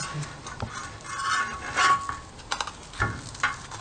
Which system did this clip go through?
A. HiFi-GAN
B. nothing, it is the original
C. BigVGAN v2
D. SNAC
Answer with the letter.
B